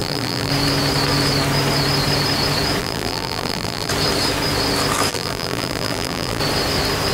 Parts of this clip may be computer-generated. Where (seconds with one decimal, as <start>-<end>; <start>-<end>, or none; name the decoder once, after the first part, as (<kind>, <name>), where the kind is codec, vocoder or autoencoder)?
0.0-0.5 (vocoder, BigVGAN v2); 2.8-3.9; 5.1-6.4